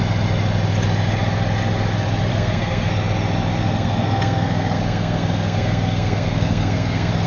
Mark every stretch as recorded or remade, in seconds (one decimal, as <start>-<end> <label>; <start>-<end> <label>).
0.0-2.3 recorded; 2.3-2.9 remade; 2.9-3.6 recorded; 3.6-7.3 remade